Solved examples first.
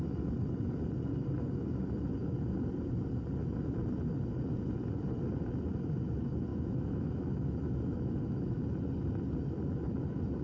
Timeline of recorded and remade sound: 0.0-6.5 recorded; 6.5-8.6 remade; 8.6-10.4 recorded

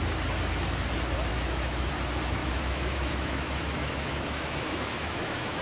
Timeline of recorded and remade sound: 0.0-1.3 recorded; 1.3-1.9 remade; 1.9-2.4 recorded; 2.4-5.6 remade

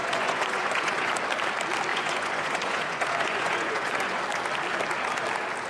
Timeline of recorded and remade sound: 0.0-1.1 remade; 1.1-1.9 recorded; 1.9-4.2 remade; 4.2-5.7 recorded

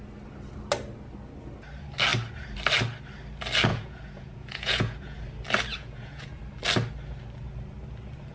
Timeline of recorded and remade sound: 0.0-3.7 recorded; 3.7-5.2 remade; 5.2-5.7 recorded; 5.7-6.4 remade; 6.4-8.3 recorded

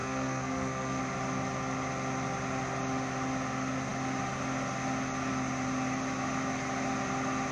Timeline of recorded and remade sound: 0.0-1.0 remade; 1.0-7.5 recorded

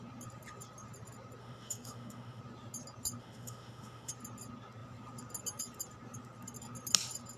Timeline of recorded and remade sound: 0.0-1.4 recorded; 1.4-2.4 remade; 2.4-3.2 recorded; 3.2-4.1 remade; 4.1-7.4 recorded